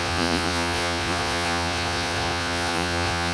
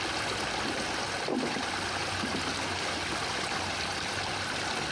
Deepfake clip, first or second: first